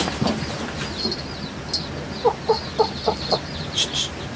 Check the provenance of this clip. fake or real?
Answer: real